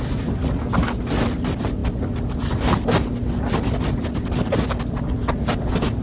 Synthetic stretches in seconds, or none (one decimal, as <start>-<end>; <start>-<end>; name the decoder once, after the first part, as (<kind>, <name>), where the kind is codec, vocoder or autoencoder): none